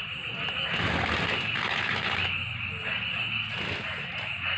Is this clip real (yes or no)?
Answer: yes